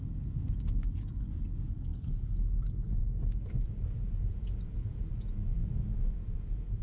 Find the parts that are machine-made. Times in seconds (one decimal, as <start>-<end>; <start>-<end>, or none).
0.0-6.8